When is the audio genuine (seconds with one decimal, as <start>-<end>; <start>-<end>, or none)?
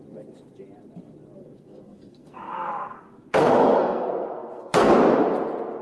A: 0.0-1.4; 4.9-5.8